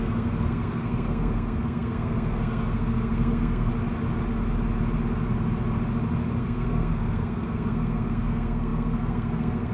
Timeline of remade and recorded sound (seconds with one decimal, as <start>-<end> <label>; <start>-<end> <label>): 0.0-3.7 remade; 3.7-6.4 recorded; 6.4-9.7 remade